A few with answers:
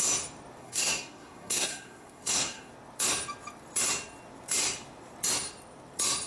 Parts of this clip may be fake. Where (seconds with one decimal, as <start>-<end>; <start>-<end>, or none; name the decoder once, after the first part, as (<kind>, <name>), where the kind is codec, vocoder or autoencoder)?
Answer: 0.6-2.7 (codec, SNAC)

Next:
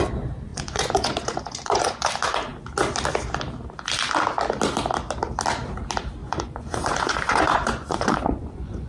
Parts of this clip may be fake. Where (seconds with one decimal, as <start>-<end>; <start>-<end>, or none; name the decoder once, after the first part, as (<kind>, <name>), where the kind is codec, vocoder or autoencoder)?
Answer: 0.5-2.1 (vocoder, Vocos); 6.2-8.9

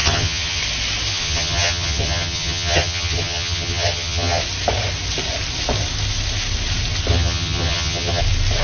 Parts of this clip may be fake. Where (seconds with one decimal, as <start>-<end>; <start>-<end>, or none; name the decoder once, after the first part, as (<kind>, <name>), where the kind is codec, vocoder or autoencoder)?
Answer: 0.0-0.6 (vocoder, HiFi-GAN); 1.1-4.4; 7.1-8.2